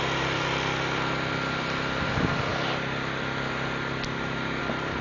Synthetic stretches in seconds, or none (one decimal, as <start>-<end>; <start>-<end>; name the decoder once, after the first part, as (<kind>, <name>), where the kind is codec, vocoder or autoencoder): none